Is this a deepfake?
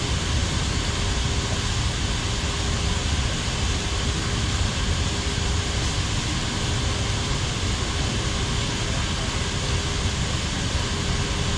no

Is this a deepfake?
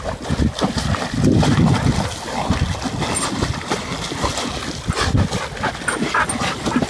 no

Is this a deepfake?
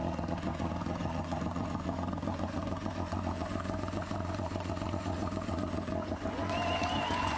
yes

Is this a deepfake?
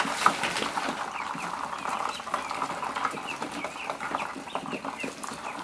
no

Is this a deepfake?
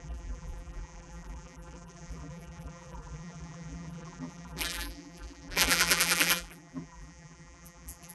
yes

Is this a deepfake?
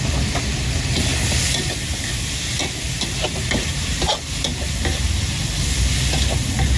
no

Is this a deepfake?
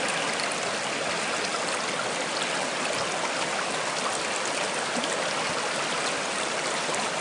no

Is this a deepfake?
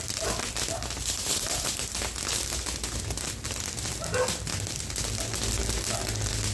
no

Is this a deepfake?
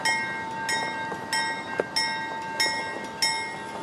no